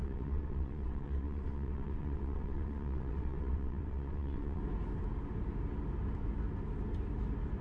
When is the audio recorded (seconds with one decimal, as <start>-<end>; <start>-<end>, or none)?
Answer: 4.6-7.6